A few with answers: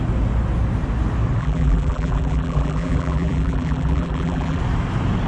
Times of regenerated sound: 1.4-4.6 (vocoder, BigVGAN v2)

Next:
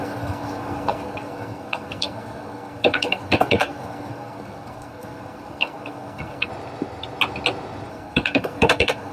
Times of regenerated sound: 0.0-6.5 (codec, SNAC); 7.9-9.1

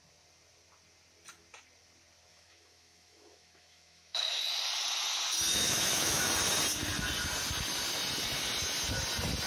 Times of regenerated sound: 2.3-4.4 (autoencoder, DAC-VAE); 5.5-6.3

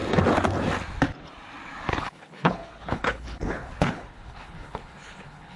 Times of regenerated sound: 1.9-5.6 (codec, HILCodec)

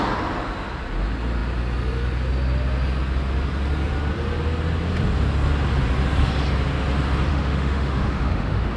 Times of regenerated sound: 7.3-8.8 (autoencoder, DAC-VAE)

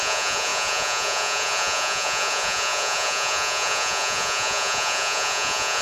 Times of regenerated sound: 0.0-5.8 (vocoder, Vocos)